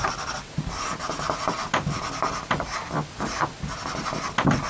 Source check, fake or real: real